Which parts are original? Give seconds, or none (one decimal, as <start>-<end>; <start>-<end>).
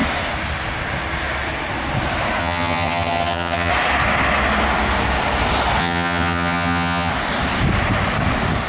0.0-2.4; 3.7-5.8; 7.1-8.7